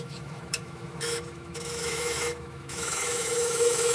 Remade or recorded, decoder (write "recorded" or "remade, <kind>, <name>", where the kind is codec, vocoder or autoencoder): remade, autoencoder, DAC-VAE